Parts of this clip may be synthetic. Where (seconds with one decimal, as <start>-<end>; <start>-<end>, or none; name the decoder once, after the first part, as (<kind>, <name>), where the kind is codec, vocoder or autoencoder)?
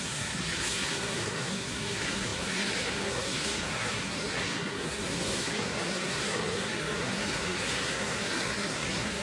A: 0.0-9.2 (codec, SNAC)